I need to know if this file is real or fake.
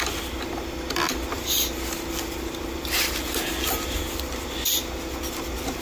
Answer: real